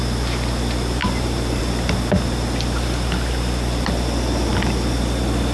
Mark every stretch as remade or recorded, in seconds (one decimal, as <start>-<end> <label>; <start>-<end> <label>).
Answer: 0.0-5.5 recorded